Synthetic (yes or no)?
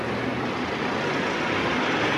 no